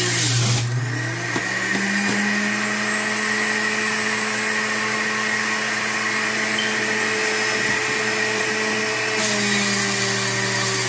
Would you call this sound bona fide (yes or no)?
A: yes